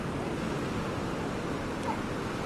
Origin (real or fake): real